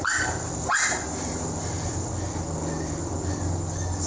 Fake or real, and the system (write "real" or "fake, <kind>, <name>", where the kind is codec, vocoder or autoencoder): real